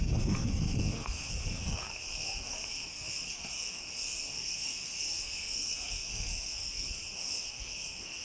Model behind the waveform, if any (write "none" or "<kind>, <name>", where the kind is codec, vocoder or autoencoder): codec, SNAC